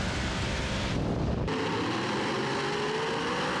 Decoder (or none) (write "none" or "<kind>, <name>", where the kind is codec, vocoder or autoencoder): none